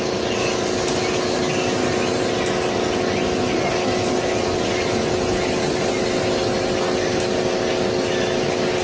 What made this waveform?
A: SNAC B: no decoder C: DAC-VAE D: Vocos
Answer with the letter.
B